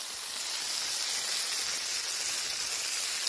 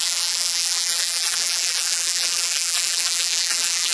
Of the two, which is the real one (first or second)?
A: first